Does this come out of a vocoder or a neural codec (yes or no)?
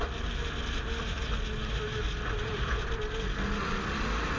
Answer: no